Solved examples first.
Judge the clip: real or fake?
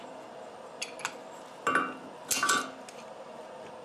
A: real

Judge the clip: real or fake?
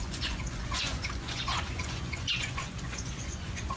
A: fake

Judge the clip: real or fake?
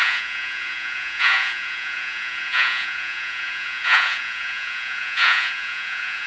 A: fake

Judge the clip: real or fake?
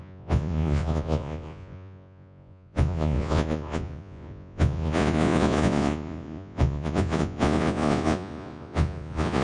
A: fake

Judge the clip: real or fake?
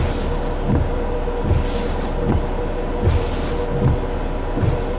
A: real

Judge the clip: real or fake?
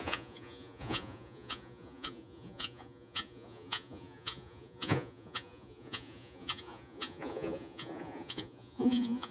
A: fake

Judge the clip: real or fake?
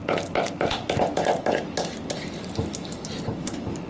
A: real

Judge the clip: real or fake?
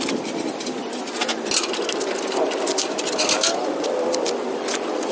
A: real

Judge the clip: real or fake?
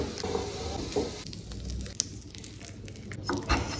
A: real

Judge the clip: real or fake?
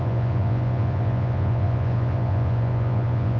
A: fake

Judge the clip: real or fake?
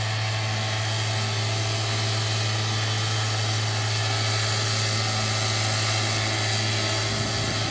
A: real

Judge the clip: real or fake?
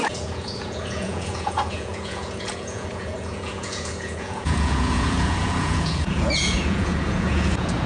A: fake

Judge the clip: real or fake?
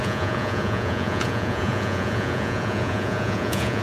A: fake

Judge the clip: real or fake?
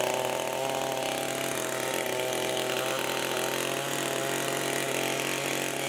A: real